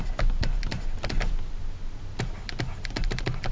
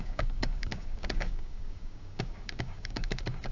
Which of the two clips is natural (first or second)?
first